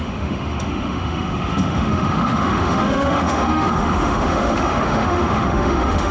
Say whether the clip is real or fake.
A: fake